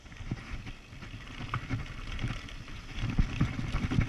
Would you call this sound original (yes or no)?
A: yes